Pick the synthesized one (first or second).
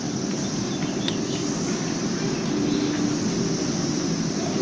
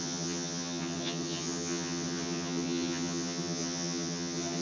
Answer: second